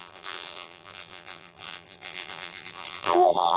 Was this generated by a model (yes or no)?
yes